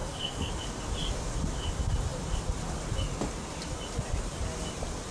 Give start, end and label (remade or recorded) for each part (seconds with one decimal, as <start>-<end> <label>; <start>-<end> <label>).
0.0-0.5 remade; 0.5-5.1 recorded